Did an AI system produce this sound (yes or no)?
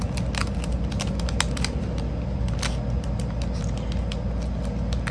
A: no